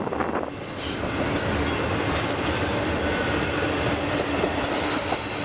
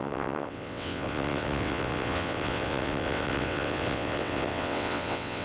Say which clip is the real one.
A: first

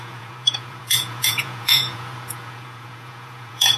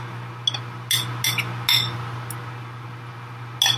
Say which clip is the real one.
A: second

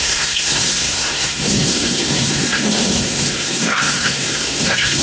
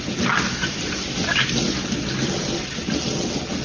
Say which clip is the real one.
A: second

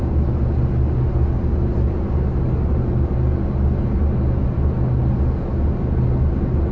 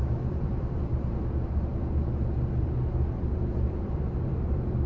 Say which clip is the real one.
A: first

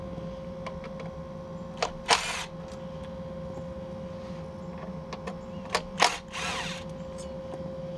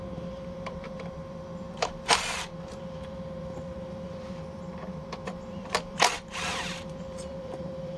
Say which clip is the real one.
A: first